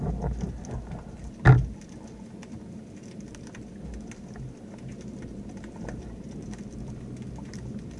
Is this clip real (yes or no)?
yes